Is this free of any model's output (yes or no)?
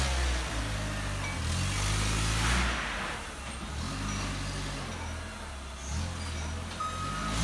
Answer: yes